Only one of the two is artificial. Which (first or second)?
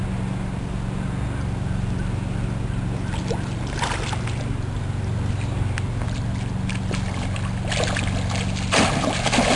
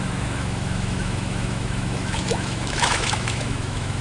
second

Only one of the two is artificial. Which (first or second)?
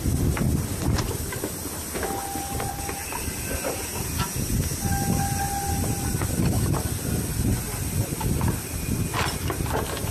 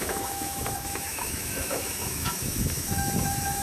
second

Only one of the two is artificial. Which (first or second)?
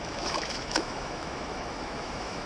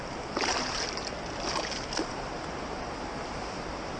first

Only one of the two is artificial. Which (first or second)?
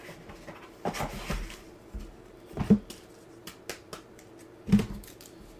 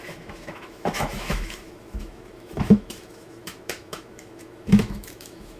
second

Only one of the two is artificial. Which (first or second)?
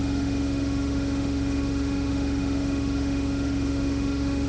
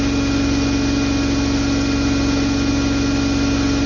first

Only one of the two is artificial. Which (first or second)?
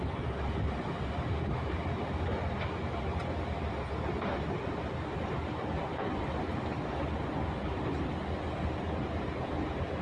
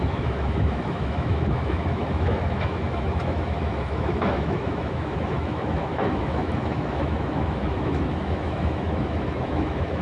second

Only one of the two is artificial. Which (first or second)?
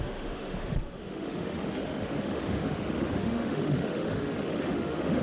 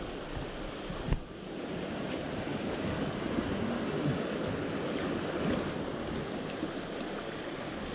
first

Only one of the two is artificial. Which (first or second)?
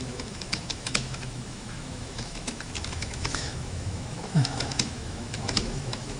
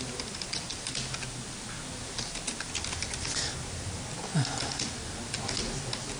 first